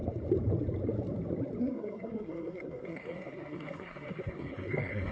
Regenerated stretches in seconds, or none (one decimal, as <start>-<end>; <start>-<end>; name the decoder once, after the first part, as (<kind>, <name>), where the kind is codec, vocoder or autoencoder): 1.6-5.1 (codec, SNAC)